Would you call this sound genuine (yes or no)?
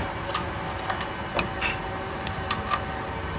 yes